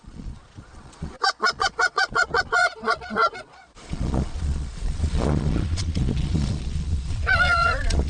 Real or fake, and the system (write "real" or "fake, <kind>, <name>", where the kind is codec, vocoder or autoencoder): fake, vocoder, Vocos